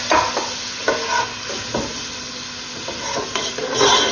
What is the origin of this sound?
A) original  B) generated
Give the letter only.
A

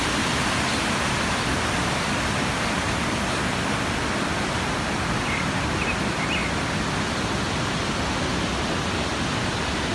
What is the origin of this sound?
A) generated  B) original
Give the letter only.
B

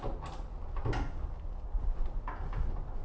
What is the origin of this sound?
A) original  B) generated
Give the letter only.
A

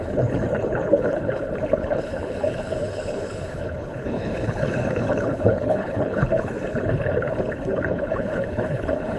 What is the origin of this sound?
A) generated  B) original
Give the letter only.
A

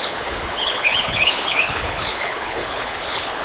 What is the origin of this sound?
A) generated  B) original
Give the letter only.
A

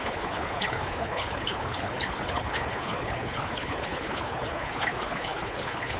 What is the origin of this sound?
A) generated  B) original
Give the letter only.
A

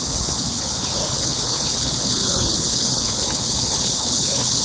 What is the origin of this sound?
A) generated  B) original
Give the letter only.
A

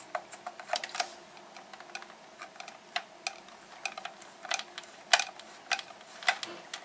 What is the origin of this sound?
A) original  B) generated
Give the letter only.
A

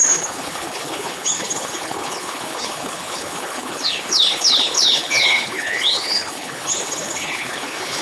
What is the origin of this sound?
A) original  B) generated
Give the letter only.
B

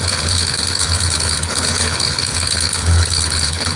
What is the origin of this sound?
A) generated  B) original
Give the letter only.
A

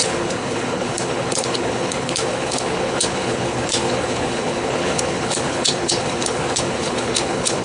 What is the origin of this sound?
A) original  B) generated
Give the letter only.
B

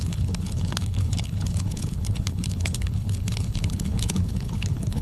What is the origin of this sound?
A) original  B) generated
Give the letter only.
B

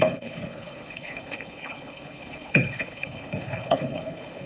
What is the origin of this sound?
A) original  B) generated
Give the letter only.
B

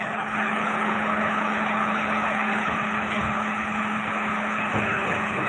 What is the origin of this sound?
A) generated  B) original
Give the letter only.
A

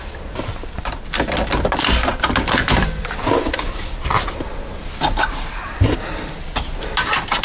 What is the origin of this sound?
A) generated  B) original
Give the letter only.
B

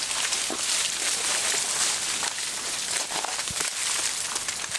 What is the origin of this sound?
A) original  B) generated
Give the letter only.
A